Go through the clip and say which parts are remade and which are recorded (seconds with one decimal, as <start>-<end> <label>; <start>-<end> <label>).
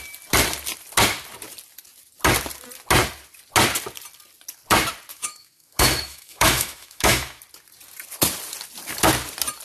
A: 0.0-5.1 recorded; 5.1-7.4 remade; 7.4-9.6 recorded